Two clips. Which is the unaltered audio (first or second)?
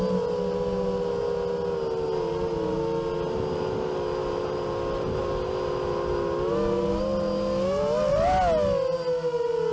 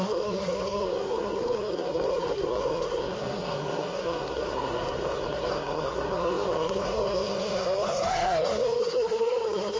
first